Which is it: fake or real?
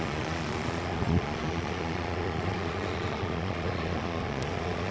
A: fake